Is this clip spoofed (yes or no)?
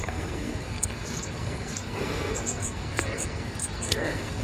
yes